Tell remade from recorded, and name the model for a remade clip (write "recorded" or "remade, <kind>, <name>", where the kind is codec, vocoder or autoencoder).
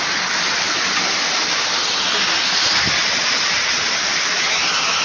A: recorded